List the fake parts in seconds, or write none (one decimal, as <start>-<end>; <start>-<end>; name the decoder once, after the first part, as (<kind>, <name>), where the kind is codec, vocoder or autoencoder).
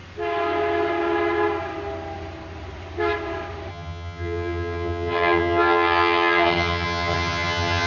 3.7-7.9 (vocoder, HiFi-GAN)